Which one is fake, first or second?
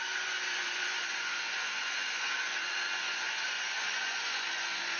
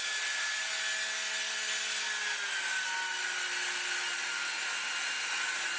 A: first